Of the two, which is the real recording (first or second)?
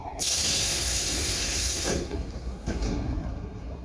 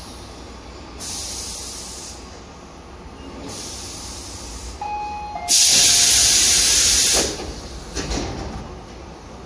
second